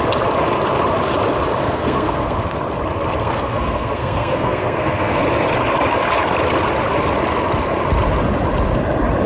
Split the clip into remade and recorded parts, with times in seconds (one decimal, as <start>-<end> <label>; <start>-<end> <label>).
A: 0.0-1.6 recorded; 1.6-2.6 remade; 2.6-3.2 recorded; 3.2-5.2 remade; 5.2-9.3 recorded

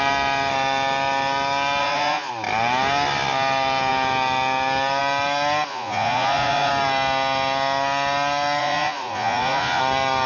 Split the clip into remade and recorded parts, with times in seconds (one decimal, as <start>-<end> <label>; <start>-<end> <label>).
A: 0.0-1.8 recorded; 1.8-2.3 remade; 2.3-5.7 recorded; 5.7-6.7 remade; 6.7-8.6 recorded; 8.6-9.8 remade; 9.8-10.3 recorded

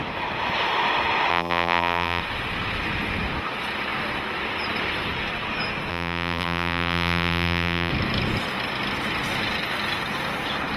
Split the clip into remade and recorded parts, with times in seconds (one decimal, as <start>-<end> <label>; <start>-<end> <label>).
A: 0.0-1.3 recorded; 1.3-2.2 remade; 2.2-5.9 recorded; 5.9-7.9 remade; 7.9-10.8 recorded

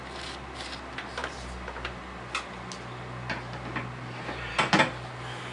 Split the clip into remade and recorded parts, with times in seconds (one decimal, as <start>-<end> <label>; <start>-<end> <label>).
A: 0.0-5.5 recorded

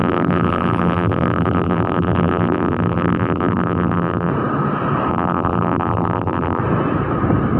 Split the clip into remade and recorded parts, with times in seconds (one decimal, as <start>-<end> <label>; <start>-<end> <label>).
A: 0.0-4.3 remade; 4.3-5.1 recorded; 5.1-6.6 remade; 6.6-7.6 recorded

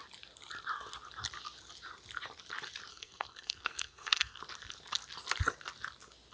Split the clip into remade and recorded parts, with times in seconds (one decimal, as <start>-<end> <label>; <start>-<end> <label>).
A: 0.0-2.9 recorded; 2.9-4.4 remade; 4.4-6.3 recorded